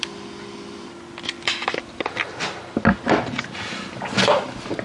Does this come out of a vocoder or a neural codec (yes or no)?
no